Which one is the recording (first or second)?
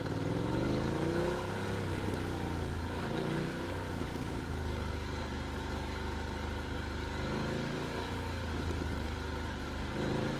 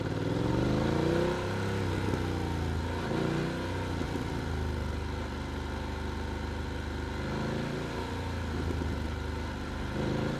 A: second